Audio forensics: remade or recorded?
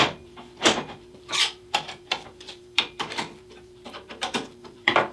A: remade